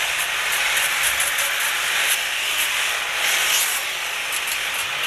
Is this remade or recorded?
remade